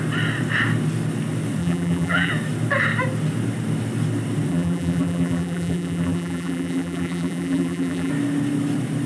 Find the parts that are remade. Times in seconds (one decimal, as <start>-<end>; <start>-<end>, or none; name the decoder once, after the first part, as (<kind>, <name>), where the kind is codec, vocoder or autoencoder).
1.6-2.3 (vocoder, BigVGAN v2); 4.5-8.1